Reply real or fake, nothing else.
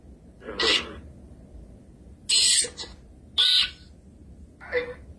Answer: real